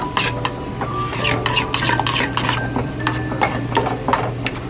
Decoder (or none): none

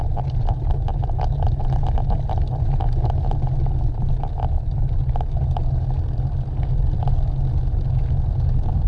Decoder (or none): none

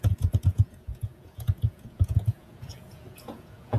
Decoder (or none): vocoder, Vocos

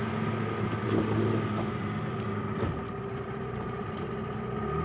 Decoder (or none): none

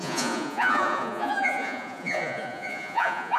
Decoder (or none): vocoder, Vocos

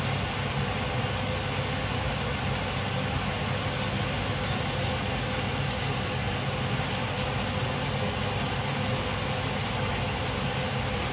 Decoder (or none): none